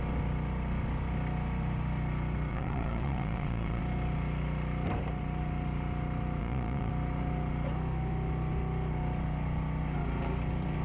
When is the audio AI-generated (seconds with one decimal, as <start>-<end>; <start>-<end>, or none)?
2.5-3.8; 6.4-6.9